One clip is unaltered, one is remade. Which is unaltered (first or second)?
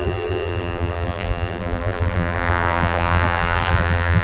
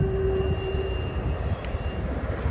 second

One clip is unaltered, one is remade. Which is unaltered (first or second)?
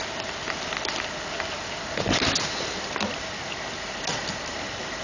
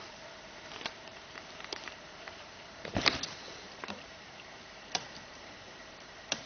first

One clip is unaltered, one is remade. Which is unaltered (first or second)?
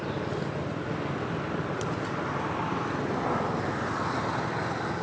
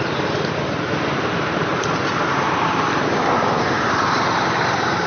first